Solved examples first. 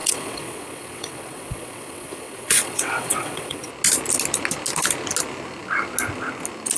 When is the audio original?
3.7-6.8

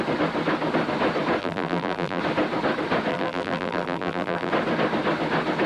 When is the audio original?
0.0-1.4; 2.2-3.1; 4.5-5.7

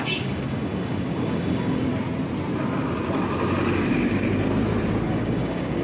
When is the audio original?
1.9-5.1

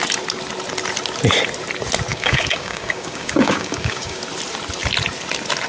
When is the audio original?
0.0-2.1; 4.2-5.7

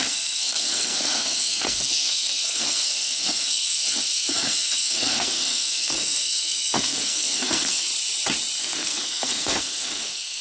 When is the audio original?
7.9-8.6

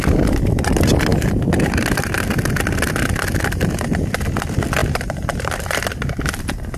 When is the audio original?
0.0-4.8; 5.5-6.8